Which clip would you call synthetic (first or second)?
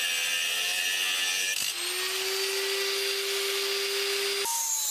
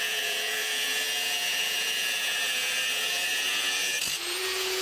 second